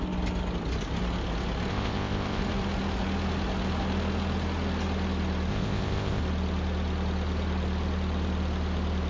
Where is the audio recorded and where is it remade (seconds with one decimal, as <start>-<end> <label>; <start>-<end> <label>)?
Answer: 0.0-1.7 recorded; 1.7-2.4 remade; 2.4-5.5 recorded; 5.5-6.2 remade; 6.2-9.1 recorded